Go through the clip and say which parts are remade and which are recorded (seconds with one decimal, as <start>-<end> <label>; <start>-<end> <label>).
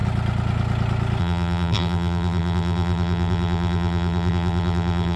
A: 0.0-1.2 recorded; 1.2-5.2 remade